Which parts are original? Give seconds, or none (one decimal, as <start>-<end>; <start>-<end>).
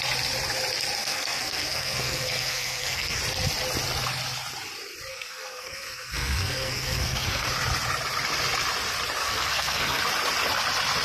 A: 0.0-1.0; 3.2-5.1; 7.5-9.2; 10.0-11.0